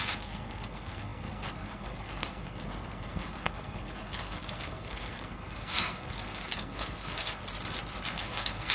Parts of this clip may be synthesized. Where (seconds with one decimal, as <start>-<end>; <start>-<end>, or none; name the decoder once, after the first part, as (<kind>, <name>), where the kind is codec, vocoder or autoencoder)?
0.0-7.4 (codec, SNAC); 8.1-8.7